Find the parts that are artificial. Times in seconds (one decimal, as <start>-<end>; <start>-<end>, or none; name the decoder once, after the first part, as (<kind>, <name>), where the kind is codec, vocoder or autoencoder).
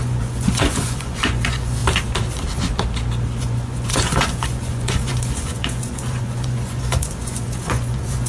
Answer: 0.0-1.8 (vocoder, Vocos); 3.4-8.3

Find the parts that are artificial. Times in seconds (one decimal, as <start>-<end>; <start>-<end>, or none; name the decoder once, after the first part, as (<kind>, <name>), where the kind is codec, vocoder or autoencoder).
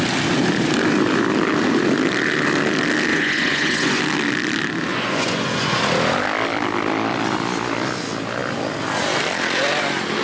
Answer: 3.1-4.0 (vocoder, Vocos); 4.9-5.8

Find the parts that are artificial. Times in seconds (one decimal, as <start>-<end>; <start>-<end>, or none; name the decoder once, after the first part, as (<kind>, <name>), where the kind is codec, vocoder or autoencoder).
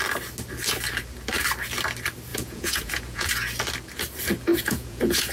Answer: 2.3-3.3 (vocoder, Vocos); 4.5-5.3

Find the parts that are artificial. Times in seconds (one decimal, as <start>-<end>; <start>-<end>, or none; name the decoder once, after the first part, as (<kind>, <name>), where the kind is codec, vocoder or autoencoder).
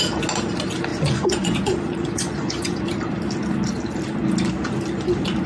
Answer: 0.9-2.8 (vocoder, Vocos)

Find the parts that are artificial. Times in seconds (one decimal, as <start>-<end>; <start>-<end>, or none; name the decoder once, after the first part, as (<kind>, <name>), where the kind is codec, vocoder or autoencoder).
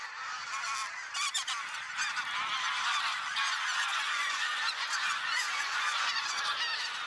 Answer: 3.3-6.4 (vocoder, Vocos)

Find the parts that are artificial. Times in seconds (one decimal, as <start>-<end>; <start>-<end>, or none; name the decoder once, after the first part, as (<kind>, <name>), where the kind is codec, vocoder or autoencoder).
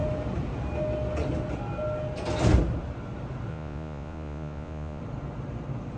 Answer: 3.5-5.0 (vocoder, Vocos)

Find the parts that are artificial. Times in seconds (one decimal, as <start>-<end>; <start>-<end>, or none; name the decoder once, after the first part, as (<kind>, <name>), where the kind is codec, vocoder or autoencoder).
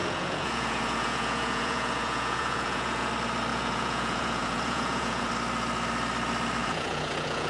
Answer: 0.0-3.1 (vocoder, Vocos); 3.5-5.3; 6.6-7.5